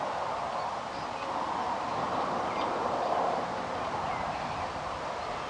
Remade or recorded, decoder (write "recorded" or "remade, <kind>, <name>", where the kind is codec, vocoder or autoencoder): recorded